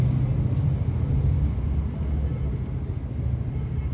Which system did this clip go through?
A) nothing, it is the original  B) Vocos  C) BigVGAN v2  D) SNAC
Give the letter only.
A